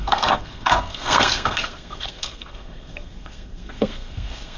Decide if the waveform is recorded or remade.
remade